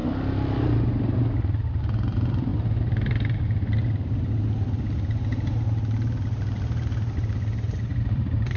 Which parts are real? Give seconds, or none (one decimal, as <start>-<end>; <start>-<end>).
0.0-7.9